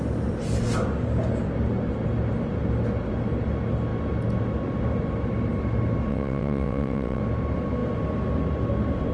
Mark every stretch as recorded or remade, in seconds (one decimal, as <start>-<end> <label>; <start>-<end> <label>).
0.0-6.1 recorded; 6.1-7.2 remade; 7.2-9.1 recorded